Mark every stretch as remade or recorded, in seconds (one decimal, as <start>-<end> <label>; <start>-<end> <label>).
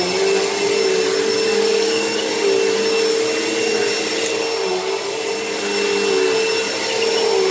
0.0-1.5 recorded; 1.5-2.3 remade; 2.3-7.5 recorded